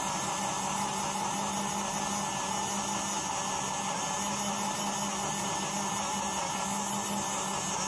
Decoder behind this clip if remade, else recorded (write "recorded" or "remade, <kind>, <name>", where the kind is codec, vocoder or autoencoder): recorded